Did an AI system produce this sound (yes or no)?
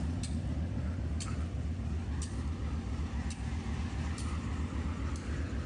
no